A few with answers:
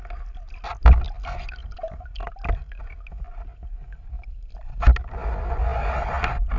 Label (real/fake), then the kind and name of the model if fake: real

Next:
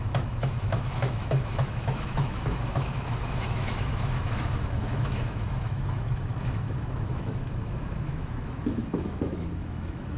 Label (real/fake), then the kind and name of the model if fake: fake, autoencoder, DAC-VAE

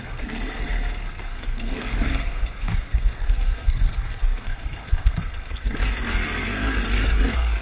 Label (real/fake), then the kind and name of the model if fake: fake, codec, SNAC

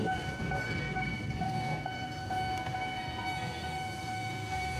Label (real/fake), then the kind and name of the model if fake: fake, codec, SNAC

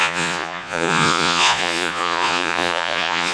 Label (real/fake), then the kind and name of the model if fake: fake, vocoder, Vocos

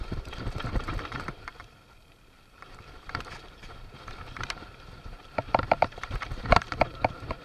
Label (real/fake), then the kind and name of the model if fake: fake, vocoder, BigVGAN v2